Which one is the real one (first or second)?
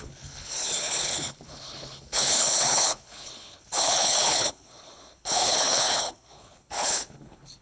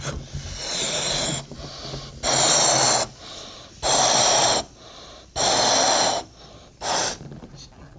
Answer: second